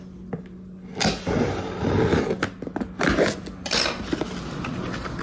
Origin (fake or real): real